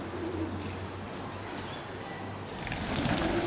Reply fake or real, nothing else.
real